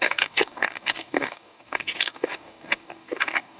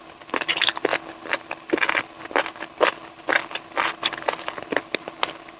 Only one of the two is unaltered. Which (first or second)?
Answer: second